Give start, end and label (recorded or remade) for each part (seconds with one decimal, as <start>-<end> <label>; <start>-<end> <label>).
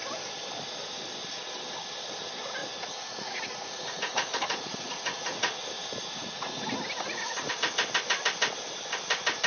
0.0-2.6 recorded; 2.6-7.5 remade; 7.5-9.5 recorded